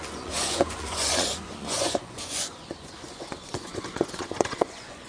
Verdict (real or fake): fake